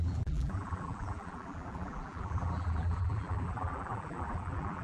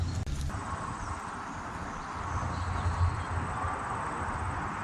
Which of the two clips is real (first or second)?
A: second